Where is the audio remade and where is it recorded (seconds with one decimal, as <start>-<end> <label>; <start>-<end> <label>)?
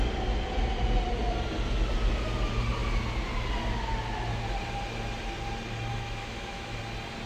0.0-5.9 recorded; 5.9-6.8 remade; 6.8-7.3 recorded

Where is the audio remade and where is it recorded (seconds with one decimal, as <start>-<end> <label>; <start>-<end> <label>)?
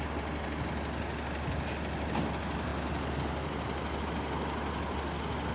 0.0-5.5 recorded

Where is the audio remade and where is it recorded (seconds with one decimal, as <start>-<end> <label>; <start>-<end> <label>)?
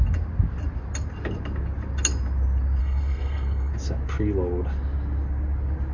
0.0-2.8 recorded; 2.8-3.7 remade; 3.7-5.9 recorded